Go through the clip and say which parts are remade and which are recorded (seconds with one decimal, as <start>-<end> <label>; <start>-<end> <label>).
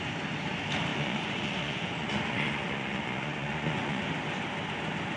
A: 0.0-0.9 recorded; 0.9-4.0 remade; 4.0-5.2 recorded